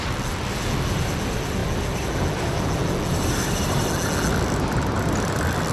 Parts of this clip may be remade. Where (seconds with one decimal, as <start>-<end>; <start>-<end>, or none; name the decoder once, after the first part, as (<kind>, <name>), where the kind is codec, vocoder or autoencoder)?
none